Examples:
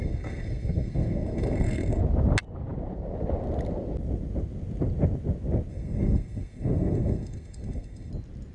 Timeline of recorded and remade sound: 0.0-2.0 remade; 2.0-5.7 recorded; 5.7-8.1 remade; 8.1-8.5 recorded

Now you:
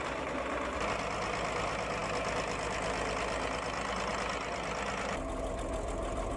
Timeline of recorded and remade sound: 0.0-6.4 recorded

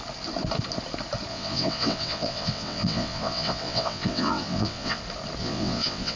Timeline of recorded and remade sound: 0.0-1.3 recorded; 1.3-5.0 remade; 5.0-5.4 recorded; 5.4-6.2 remade

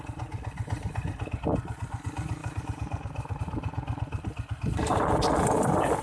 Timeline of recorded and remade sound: 0.0-2.4 recorded; 2.4-3.4 remade; 3.4-6.0 recorded

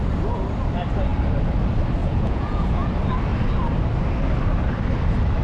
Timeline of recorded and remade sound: 0.0-2.0 recorded; 2.0-2.9 remade; 2.9-5.4 recorded